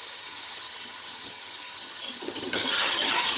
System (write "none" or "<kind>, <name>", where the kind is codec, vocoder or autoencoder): vocoder, HiFi-GAN